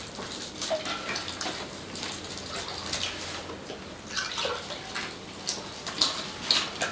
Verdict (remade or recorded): recorded